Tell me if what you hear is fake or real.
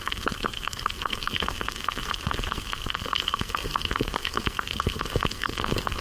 fake